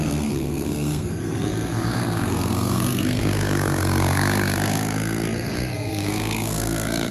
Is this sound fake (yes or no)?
yes